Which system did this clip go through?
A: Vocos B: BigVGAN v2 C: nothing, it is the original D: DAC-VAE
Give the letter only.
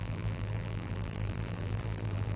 B